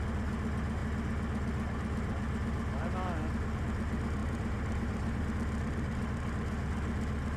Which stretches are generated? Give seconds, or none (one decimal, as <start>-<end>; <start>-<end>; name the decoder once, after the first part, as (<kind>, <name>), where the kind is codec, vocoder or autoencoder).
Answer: 4.2-5.2 (vocoder, BigVGAN v2)